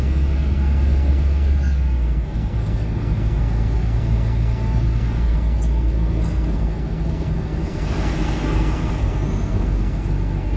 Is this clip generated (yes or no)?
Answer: yes